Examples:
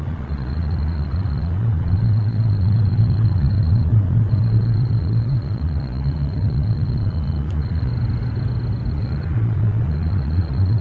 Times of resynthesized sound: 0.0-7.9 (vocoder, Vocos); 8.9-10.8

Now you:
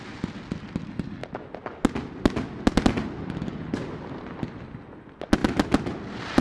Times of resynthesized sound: none

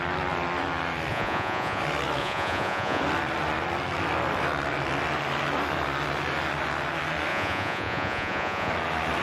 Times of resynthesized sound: 1.1-1.8 (vocoder, Vocos); 2.2-3.0; 7.3-8.7

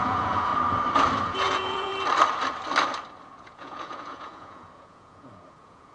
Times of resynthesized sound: 0.0-0.5 (vocoder, Vocos); 1.3-1.9; 3.2-5.9

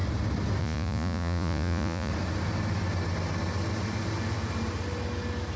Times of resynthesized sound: 0.6-2.1 (vocoder, Vocos)

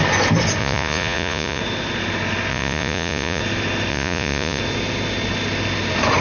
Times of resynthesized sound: 0.6-1.6 (vocoder, Vocos); 2.5-3.4; 3.9-4.6